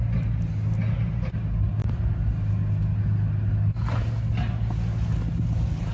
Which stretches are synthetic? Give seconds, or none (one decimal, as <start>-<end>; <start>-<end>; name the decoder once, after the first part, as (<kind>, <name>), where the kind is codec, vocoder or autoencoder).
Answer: none